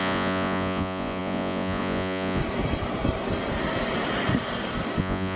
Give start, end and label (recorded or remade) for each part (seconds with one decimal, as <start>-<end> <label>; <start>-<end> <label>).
0.0-2.4 remade; 2.4-5.0 recorded; 5.0-5.4 remade